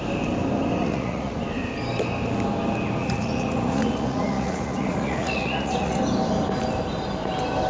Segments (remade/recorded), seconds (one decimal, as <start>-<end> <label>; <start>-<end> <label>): 0.0-0.8 recorded; 0.8-1.4 remade; 1.4-3.0 recorded; 3.0-6.0 remade; 6.0-7.7 recorded